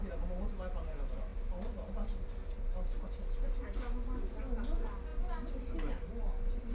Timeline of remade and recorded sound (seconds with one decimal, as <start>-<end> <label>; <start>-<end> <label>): 0.0-1.3 recorded; 1.3-2.6 remade; 2.6-5.1 recorded; 5.1-6.1 remade; 6.1-6.7 recorded